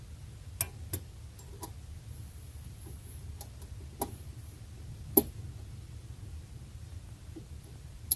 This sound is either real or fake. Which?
real